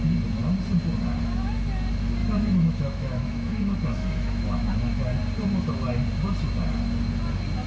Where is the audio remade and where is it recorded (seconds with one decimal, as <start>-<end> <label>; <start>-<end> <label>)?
0.0-2.2 recorded; 2.2-4.7 remade; 4.7-7.7 recorded